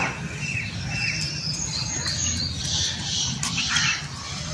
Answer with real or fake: real